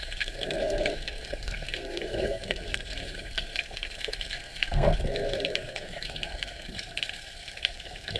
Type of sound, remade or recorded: remade